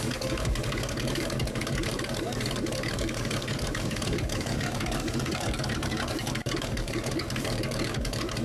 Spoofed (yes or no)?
yes